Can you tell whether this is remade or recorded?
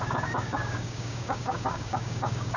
remade